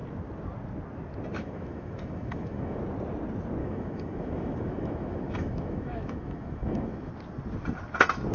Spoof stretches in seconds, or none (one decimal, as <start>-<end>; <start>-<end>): 1.3-2.8; 3.6-7.1